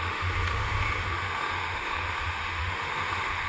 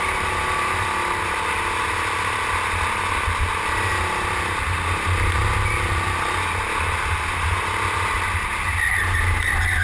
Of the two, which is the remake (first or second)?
first